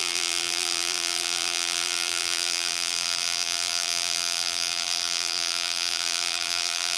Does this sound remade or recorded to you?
remade